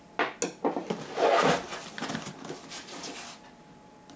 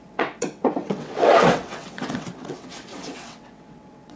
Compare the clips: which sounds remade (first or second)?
second